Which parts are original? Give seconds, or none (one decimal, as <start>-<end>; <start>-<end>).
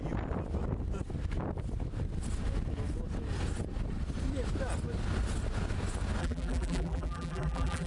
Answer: 0.0-6.2